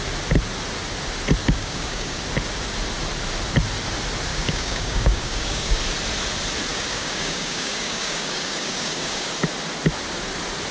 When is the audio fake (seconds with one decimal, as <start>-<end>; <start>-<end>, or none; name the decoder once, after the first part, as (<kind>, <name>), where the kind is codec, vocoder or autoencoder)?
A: 1.4-2.2 (codec, DAC); 4.3-5.8; 6.7-9.3